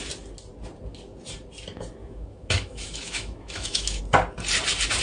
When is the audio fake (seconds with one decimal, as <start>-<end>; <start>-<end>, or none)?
2.0-4.0